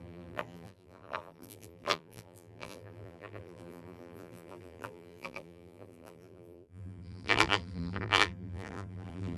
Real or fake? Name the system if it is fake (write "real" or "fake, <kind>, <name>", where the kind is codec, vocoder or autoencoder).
fake, vocoder, BigVGAN v2